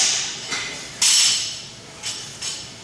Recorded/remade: recorded